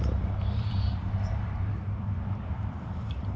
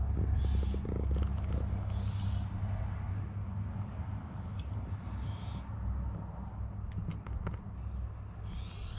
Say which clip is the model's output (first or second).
first